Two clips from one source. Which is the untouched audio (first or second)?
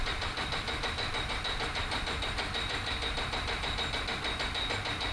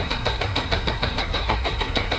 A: first